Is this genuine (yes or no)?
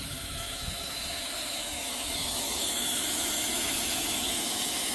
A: no